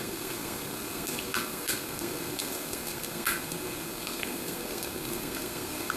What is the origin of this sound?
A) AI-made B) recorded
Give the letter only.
A